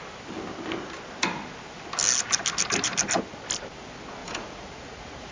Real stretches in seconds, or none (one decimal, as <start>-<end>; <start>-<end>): 0.0-4.2